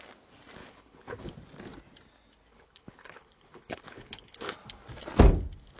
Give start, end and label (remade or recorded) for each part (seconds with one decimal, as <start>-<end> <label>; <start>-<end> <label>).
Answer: 0.0-0.6 recorded; 0.6-1.3 remade; 1.3-2.5 recorded; 2.5-4.5 remade; 4.5-5.8 recorded